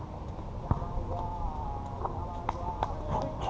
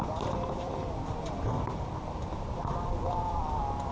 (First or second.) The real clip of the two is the first